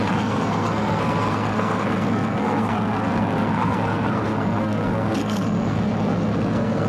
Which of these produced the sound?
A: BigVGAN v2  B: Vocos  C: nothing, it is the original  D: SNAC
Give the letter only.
D